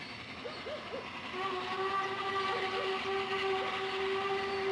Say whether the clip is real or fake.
real